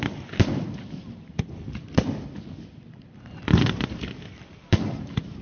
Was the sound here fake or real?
fake